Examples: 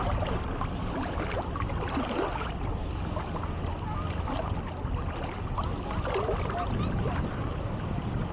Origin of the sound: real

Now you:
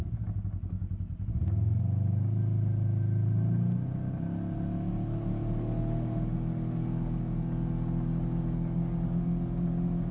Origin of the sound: real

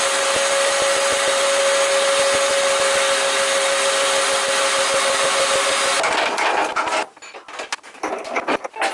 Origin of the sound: real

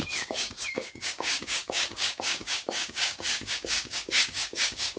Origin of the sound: fake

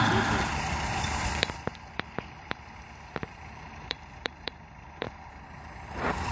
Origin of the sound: fake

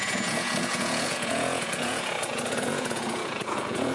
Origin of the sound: fake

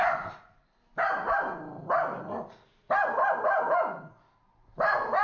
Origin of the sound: real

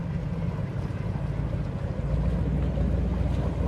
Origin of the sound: real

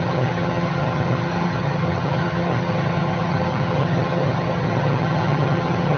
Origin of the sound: fake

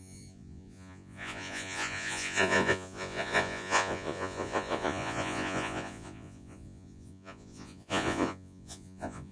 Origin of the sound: fake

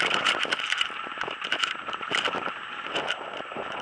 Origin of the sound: fake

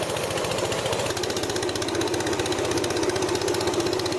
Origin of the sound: real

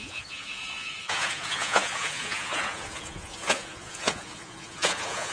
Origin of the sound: fake